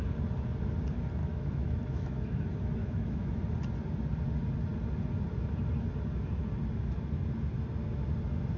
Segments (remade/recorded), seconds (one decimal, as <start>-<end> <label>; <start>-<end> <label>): 0.0-1.2 recorded; 1.2-2.4 remade; 2.4-2.8 recorded; 2.8-3.4 remade; 3.4-8.6 recorded